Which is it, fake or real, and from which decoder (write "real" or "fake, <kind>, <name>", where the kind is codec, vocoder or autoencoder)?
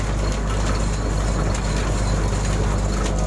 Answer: real